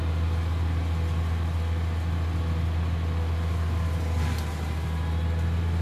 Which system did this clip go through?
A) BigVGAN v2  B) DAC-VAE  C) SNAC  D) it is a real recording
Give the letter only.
D